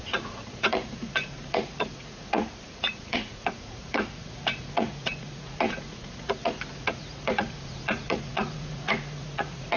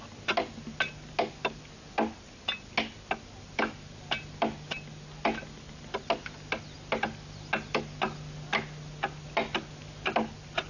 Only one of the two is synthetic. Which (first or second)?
first